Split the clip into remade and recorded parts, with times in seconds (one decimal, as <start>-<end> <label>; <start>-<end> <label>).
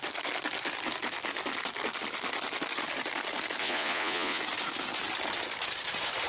0.0-3.6 recorded; 3.6-4.4 remade; 4.4-6.3 recorded